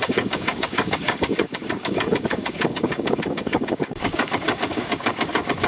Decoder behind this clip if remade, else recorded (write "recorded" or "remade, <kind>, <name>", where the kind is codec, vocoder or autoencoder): remade, codec, DAC